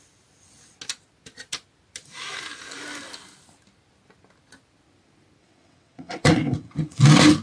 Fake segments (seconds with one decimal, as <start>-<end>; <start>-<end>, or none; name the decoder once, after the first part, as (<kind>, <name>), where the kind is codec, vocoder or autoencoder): 5.4-7.0 (vocoder, WaveNeXt)